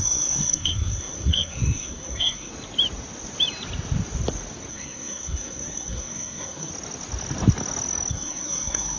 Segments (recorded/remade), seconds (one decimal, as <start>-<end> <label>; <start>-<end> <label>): 0.0-2.5 remade; 2.5-4.7 recorded; 4.7-6.7 remade; 6.7-8.1 recorded; 8.1-9.0 remade